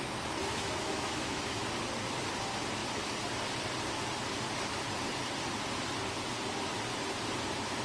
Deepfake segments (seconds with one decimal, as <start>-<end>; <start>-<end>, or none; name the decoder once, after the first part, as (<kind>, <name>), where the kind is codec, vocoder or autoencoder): 0.4-1.6 (autoencoder, DAC-VAE)